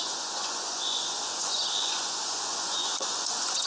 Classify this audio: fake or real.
fake